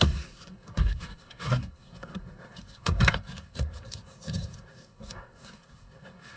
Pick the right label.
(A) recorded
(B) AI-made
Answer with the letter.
B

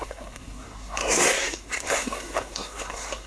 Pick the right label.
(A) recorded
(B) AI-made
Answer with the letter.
B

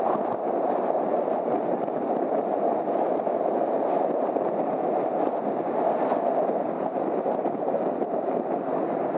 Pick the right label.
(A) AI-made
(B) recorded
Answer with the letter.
B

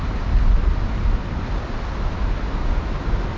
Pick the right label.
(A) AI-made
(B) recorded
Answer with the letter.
B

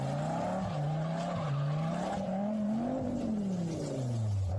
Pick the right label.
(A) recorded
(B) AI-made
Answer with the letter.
A